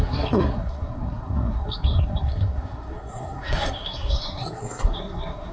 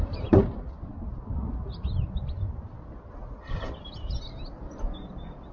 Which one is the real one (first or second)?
second